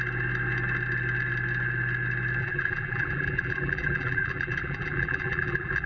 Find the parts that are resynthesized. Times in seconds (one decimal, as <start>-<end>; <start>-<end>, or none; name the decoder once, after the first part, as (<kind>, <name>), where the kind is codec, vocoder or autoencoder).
2.4-5.9 (vocoder, BigVGAN v2)